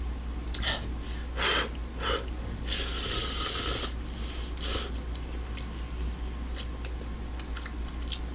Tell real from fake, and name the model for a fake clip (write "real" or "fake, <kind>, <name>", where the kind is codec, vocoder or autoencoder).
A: real